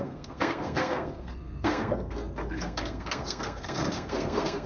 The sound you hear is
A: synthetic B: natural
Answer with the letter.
A